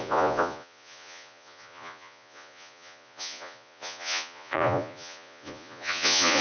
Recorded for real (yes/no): no